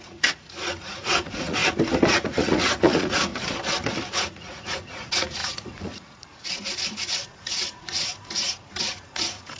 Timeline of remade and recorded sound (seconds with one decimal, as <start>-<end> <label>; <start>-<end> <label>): 0.0-1.6 remade; 1.6-2.1 recorded; 2.1-3.3 remade; 3.3-4.1 recorded; 4.1-9.6 remade